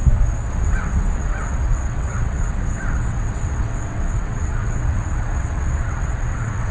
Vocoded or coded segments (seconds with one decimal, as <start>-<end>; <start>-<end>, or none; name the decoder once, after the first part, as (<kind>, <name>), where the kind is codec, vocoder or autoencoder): 0.5-6.7 (vocoder, WaveNeXt)